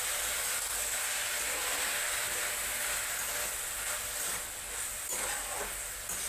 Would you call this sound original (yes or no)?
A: yes